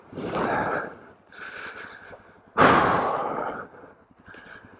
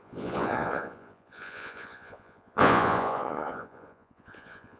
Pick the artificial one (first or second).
second